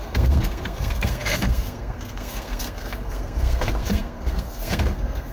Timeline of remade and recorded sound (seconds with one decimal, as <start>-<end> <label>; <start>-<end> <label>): 0.0-5.3 remade

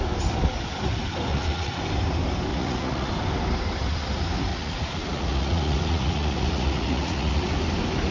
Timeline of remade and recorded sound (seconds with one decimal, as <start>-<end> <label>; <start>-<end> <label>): 0.0-1.3 recorded; 1.3-1.8 remade; 1.8-2.5 recorded; 2.5-3.1 remade; 3.1-4.5 recorded; 4.5-7.5 remade; 7.5-8.1 recorded

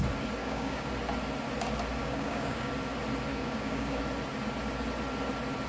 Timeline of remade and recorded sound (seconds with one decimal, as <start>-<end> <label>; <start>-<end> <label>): 0.0-0.4 recorded; 0.4-0.9 remade; 0.9-2.0 recorded; 2.0-2.7 remade; 2.7-3.3 recorded; 3.3-4.0 remade; 4.0-5.7 recorded

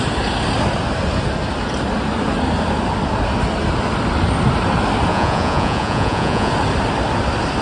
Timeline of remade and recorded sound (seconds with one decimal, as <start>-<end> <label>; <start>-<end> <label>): 0.0-5.1 recorded; 5.1-6.5 remade; 6.5-7.6 recorded

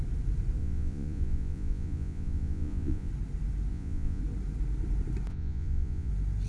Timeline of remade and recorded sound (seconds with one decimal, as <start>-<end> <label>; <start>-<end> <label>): 0.0-0.6 recorded; 0.6-3.1 remade; 3.1-3.7 recorded; 3.7-4.2 remade; 4.2-5.3 recorded; 5.3-6.1 remade; 6.1-6.5 recorded

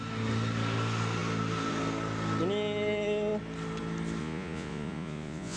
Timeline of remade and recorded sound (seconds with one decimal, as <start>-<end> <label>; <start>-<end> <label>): 0.0-4.2 recorded; 4.2-5.6 remade